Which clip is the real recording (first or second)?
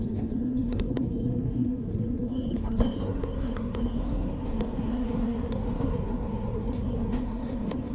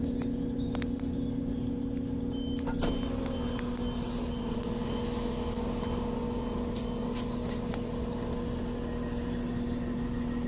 second